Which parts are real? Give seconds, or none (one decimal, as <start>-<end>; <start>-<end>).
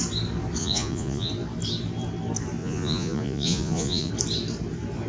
0.0-0.6; 1.3-2.6; 4.1-5.1